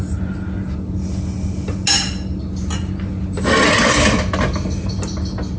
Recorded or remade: recorded